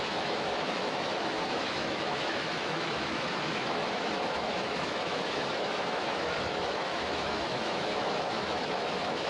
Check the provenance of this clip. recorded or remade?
remade